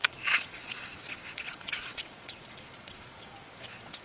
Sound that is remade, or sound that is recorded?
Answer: remade